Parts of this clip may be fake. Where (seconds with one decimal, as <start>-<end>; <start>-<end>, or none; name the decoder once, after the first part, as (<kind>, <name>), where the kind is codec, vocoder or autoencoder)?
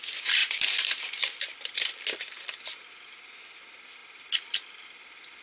none